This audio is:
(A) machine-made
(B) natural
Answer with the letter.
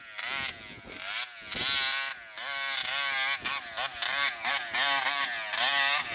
B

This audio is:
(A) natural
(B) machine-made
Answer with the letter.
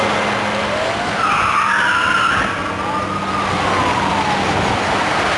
A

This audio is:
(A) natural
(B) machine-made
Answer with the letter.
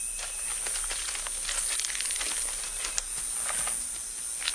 A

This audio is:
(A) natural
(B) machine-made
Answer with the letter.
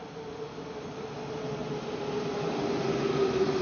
A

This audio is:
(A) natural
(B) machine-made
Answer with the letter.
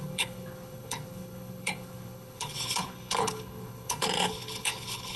B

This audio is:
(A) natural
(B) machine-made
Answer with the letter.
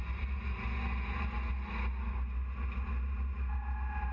A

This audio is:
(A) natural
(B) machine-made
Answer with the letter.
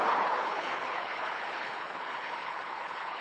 B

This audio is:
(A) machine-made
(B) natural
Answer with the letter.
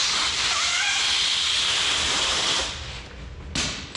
B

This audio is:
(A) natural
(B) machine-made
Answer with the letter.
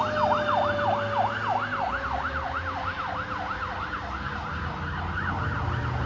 A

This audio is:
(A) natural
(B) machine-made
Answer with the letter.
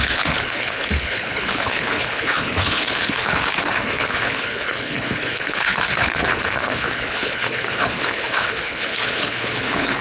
B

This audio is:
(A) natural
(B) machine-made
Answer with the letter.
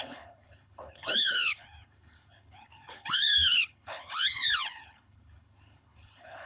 B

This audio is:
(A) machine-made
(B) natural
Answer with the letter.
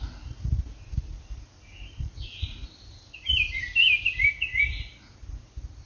B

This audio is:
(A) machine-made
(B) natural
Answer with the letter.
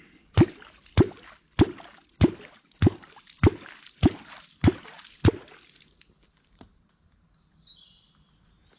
B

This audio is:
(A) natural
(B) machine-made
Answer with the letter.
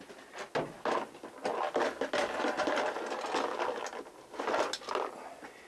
A